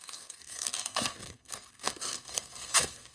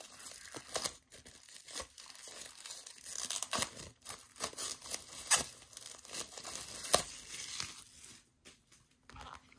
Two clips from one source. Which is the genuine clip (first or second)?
second